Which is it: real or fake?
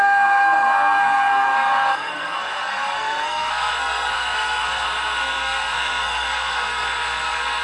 fake